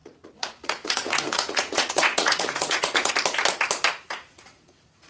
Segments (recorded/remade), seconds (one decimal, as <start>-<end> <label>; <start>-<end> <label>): 0.0-3.1 remade; 3.1-3.9 recorded; 3.9-5.1 remade